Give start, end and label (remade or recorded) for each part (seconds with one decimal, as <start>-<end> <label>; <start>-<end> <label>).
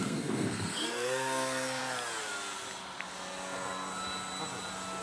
0.0-1.8 remade; 1.8-5.0 recorded